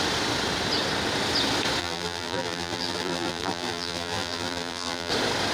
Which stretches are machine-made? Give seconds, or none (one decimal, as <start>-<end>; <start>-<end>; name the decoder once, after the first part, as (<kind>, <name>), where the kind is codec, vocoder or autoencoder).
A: 1.8-5.1 (vocoder, BigVGAN v2)